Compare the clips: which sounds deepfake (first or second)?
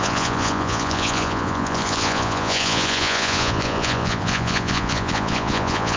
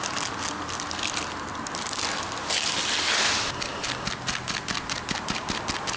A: first